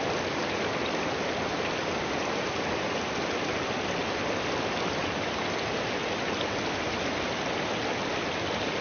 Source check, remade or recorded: recorded